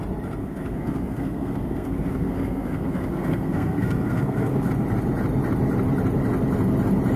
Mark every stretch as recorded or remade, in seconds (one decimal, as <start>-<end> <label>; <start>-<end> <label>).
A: 0.0-0.4 recorded; 0.4-4.7 remade; 4.7-7.2 recorded